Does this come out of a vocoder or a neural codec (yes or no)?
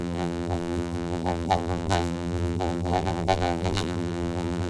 yes